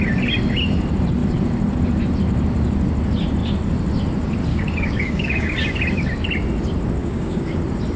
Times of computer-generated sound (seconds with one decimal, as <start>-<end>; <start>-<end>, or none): 4.5-5.5; 7.0-7.6